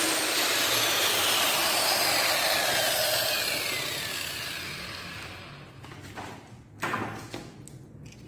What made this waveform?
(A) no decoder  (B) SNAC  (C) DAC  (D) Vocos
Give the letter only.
A